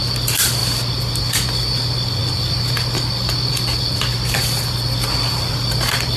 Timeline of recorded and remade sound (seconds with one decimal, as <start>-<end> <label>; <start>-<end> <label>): 0.0-6.2 recorded